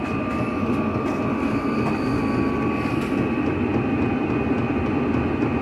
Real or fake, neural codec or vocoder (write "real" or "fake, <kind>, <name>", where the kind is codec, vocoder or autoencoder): real